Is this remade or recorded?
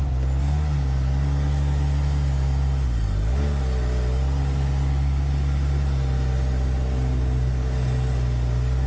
recorded